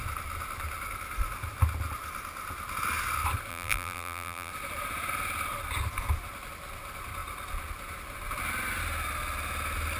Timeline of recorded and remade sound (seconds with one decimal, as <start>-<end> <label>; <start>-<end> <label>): 0.0-3.5 recorded; 3.5-4.5 remade; 4.5-10.0 recorded

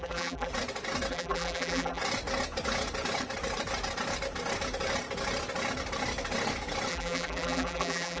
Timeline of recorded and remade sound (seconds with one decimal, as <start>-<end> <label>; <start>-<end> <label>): 0.0-0.5 remade; 0.5-1.1 recorded; 1.1-2.0 remade; 2.0-6.9 recorded; 6.9-8.2 remade

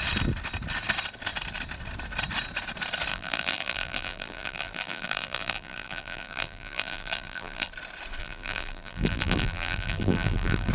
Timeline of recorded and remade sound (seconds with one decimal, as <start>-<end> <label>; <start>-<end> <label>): 0.0-3.1 recorded; 3.1-7.7 remade; 7.7-8.2 recorded; 8.2-10.7 remade

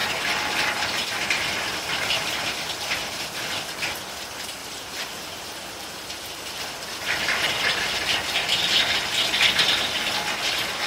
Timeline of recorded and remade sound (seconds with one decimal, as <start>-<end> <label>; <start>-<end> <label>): 0.0-4.6 recorded; 4.6-7.8 remade; 7.8-10.9 recorded